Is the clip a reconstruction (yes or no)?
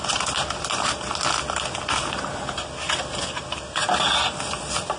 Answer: no